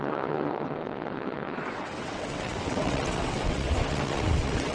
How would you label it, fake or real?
fake